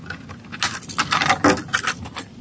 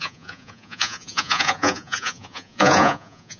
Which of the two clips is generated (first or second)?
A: second